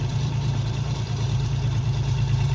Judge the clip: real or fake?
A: fake